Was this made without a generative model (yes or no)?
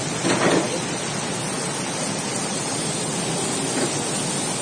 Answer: yes